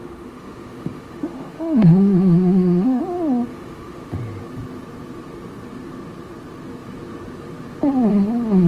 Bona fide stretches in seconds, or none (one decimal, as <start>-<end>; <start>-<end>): 3.0-3.5; 4.1-8.7